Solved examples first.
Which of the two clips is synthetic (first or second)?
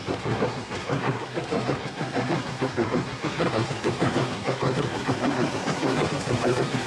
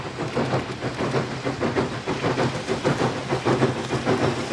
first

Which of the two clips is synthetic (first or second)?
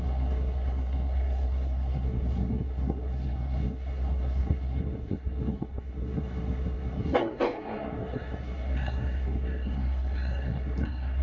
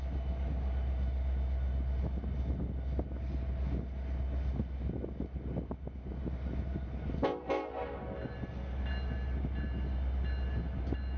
first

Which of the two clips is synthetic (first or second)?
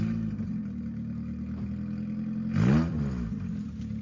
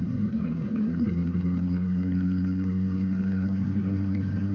second